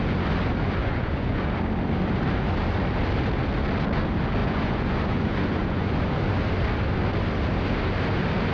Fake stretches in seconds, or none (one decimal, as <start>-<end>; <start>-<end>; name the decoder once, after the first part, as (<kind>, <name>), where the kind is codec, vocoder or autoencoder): 0.8-1.5 (vocoder, Vocos); 4.4-6.2